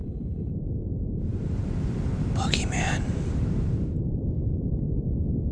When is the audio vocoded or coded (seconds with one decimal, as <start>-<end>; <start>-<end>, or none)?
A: 0.0-0.5